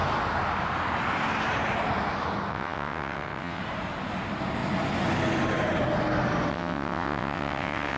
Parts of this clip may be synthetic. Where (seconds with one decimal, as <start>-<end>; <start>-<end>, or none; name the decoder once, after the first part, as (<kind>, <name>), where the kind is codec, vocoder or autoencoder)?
2.5-3.6 (vocoder, WaveNeXt); 6.5-8.0